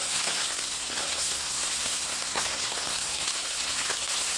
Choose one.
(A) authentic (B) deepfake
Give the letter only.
B